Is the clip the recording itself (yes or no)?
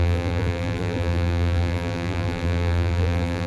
no